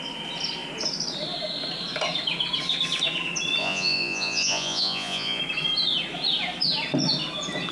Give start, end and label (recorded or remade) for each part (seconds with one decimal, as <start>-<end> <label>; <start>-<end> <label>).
0.0-3.6 recorded; 3.6-5.4 remade; 5.4-7.7 recorded